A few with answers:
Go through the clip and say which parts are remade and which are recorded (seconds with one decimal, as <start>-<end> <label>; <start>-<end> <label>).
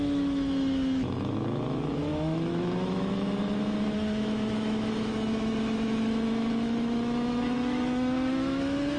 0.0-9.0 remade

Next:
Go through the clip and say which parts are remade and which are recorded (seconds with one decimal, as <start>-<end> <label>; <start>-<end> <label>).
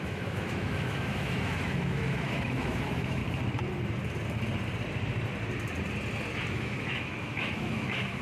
0.0-3.2 remade; 3.2-6.5 recorded; 6.5-8.2 remade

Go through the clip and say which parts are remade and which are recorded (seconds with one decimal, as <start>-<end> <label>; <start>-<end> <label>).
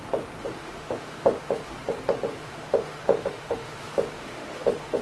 0.0-0.6 recorded; 0.6-1.7 remade; 1.7-2.4 recorded; 2.4-5.0 remade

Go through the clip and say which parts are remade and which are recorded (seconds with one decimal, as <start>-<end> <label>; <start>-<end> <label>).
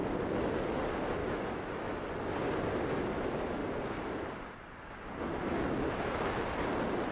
0.0-1.2 recorded; 1.2-2.0 remade; 2.0-7.1 recorded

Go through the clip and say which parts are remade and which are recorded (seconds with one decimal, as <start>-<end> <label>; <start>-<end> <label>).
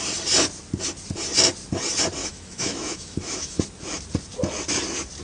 0.0-2.2 recorded; 2.2-3.6 remade; 3.6-5.2 recorded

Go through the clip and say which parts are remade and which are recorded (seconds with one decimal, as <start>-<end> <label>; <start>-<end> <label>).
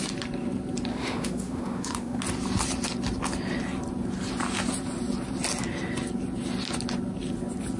0.0-0.9 recorded; 0.9-2.2 remade; 2.2-7.8 recorded